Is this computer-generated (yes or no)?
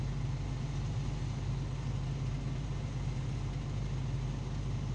no